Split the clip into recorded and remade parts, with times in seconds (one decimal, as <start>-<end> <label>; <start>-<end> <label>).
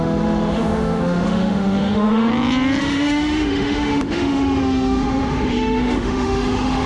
0.0-2.3 remade; 2.3-2.8 recorded; 2.8-6.9 remade